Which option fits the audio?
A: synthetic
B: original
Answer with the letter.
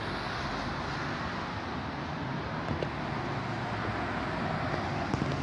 B